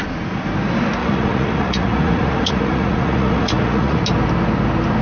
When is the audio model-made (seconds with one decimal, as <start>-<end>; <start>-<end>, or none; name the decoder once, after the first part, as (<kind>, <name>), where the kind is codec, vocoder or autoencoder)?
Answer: 1.0-4.0 (vocoder, Vocos)